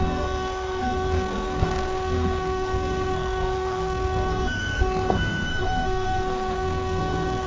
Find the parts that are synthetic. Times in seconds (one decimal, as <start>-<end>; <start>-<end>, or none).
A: 0.0-7.5